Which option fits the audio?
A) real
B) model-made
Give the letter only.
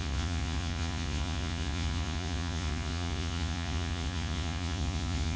B